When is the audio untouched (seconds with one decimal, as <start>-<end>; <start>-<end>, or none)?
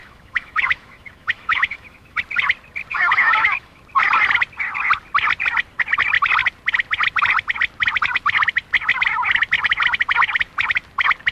2.2-2.9; 3.8-11.3